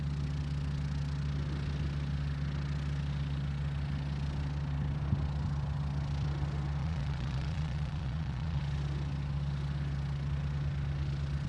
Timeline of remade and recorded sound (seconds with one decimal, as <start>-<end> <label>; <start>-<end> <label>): 0.0-6.8 recorded; 6.8-8.6 remade; 8.6-11.5 recorded